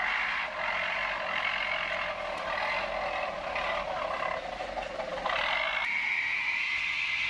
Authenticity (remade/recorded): recorded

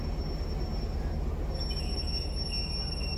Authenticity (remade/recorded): recorded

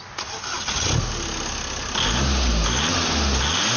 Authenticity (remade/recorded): recorded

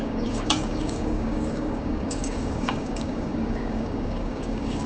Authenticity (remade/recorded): remade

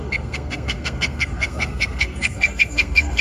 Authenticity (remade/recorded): remade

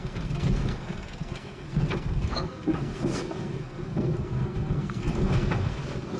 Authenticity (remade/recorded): remade